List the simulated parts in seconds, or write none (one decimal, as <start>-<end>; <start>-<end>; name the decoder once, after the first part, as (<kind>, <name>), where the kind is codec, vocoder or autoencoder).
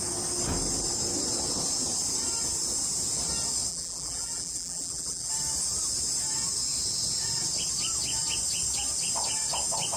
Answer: 3.7-5.3 (vocoder, BigVGAN v2)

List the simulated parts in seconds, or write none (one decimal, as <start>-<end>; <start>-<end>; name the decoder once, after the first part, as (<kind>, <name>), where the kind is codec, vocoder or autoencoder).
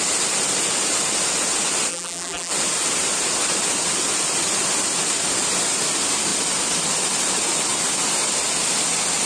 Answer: 1.9-2.5 (vocoder, BigVGAN v2)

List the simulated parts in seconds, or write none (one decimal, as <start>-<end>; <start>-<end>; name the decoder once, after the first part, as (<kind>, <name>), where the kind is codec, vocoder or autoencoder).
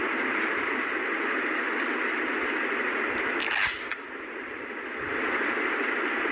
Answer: 3.9-5.8 (vocoder, BigVGAN v2)